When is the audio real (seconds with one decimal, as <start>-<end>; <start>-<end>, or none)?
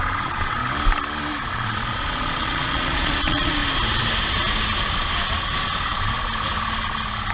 0.6-1.5; 3.6-7.3